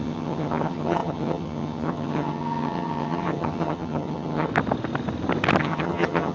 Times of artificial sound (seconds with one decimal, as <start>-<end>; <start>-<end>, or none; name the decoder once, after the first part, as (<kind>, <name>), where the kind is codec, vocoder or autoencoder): 0.0-4.5 (vocoder, HiFi-GAN); 5.6-6.3